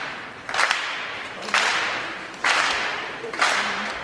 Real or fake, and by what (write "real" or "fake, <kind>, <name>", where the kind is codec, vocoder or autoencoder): fake, vocoder, BigVGAN v2